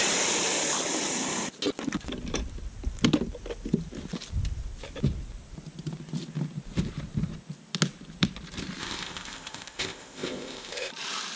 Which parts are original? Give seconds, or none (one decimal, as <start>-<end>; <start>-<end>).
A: 0.0-8.8; 10.9-11.4